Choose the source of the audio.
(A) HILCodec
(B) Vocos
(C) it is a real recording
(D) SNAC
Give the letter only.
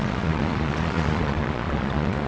B